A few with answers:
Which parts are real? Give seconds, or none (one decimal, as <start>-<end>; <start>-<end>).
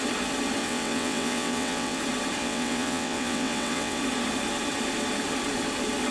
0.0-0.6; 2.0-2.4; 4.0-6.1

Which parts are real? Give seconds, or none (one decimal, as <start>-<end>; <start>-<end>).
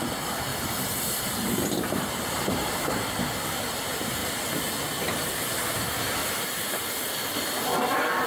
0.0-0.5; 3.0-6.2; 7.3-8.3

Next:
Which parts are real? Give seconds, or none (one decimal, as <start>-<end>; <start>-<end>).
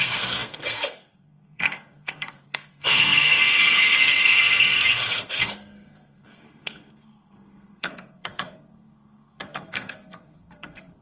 none